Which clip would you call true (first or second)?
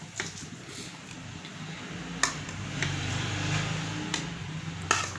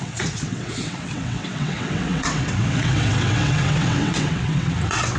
first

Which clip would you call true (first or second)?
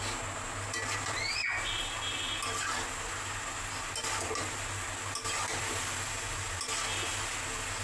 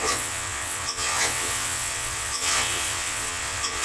first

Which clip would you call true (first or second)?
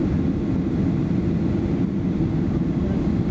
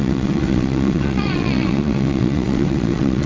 first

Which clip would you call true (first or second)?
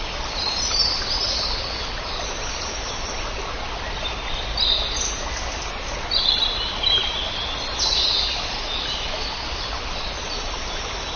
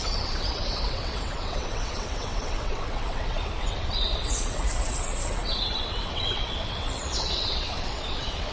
first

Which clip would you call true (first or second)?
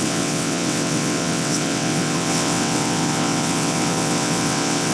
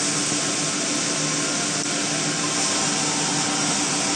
second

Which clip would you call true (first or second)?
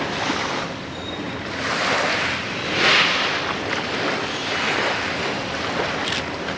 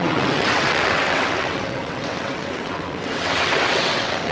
first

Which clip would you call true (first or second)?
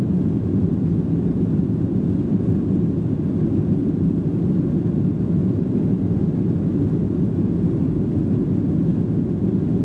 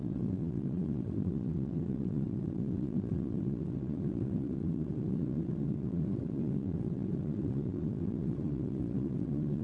first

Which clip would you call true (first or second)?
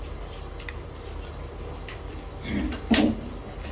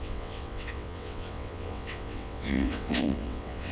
first